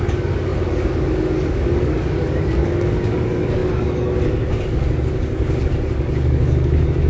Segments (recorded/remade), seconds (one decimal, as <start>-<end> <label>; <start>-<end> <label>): 0.0-7.1 remade